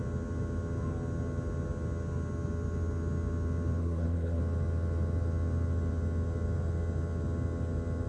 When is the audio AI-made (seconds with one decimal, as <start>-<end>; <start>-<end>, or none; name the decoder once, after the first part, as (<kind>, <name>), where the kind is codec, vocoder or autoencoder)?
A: 3.8-4.4 (codec, SNAC)